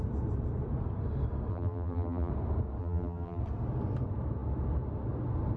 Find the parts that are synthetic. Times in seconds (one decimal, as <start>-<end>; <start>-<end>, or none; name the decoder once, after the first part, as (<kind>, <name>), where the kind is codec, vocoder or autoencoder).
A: 1.5-2.3 (vocoder, BigVGAN v2); 2.8-3.4